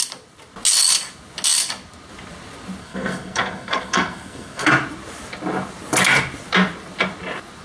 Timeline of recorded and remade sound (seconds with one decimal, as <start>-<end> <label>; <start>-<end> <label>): 0.0-2.8 recorded; 2.8-4.7 remade; 4.7-7.6 recorded